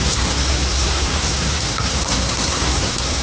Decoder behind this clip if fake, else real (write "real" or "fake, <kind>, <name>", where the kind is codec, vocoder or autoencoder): fake, codec, SNAC